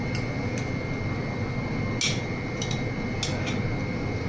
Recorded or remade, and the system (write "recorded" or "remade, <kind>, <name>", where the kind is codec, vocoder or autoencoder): recorded